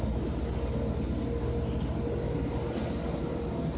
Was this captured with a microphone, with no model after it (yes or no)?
yes